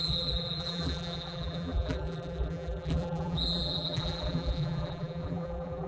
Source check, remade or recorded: remade